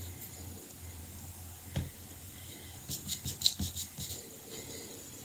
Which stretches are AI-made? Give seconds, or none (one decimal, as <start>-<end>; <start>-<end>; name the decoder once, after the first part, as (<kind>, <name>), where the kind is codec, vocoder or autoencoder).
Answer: 1.0-4.1 (codec, DAC)

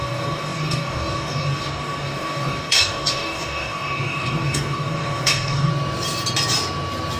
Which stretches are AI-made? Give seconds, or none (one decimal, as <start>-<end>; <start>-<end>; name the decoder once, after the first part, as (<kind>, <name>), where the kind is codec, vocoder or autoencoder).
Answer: 0.0-5.7 (codec, DAC)

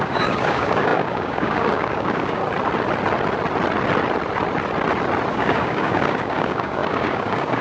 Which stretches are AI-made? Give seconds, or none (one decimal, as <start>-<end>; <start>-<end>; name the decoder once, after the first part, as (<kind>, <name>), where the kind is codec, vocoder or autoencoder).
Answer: 0.0-2.4 (codec, DAC); 5.3-7.6